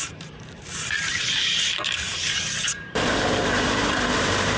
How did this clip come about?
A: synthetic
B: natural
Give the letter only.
A